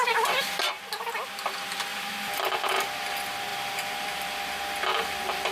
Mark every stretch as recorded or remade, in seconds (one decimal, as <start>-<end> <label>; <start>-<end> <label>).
0.0-0.8 remade; 0.8-1.9 recorded; 1.9-2.4 remade; 2.4-3.5 recorded; 3.5-4.5 remade; 4.5-4.9 recorded; 4.9-5.5 remade